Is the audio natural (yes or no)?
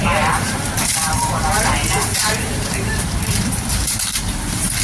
no